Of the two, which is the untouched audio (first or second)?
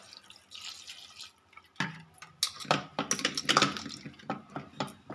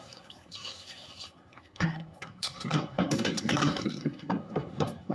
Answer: first